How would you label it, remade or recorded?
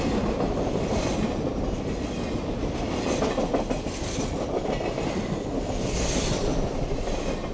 recorded